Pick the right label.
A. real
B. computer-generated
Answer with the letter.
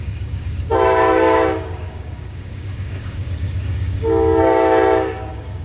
B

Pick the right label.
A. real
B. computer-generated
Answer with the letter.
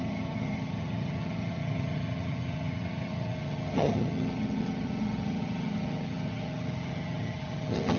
B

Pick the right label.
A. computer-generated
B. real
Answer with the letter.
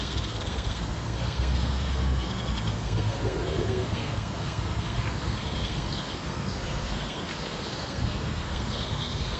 A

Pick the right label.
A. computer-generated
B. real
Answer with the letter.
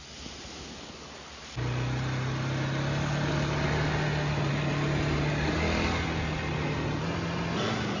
B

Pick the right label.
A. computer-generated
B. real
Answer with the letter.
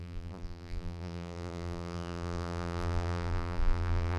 A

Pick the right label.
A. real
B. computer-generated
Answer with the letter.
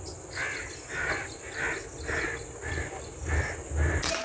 A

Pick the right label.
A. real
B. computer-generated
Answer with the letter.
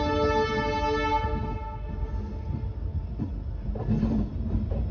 A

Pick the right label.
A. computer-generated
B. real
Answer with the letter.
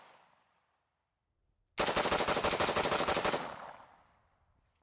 B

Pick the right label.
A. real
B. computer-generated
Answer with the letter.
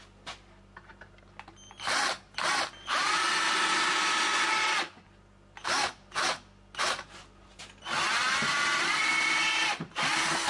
A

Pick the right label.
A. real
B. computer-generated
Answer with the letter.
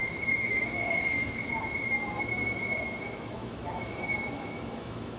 B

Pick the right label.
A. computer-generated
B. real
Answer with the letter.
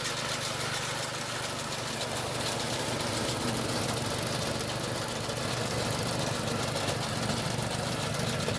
B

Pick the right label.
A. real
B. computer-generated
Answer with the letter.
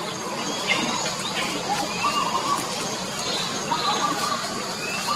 A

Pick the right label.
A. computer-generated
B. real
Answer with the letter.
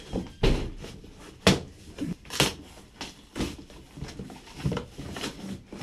B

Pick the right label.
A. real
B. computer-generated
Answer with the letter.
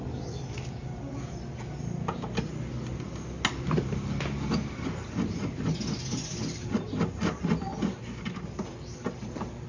A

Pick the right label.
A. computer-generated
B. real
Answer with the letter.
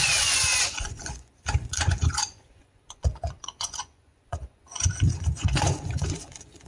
A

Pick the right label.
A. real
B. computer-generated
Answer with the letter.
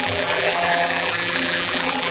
B